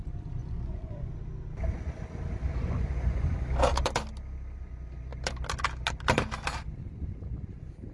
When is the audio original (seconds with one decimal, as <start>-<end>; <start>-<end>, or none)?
0.0-0.4; 1.1-2.5; 3.4-7.9